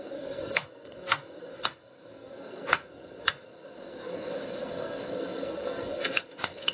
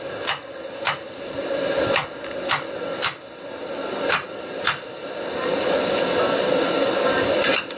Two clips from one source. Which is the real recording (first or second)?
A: second